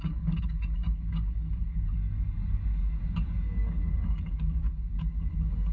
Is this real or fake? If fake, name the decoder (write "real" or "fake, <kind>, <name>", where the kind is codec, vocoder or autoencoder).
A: fake, codec, DAC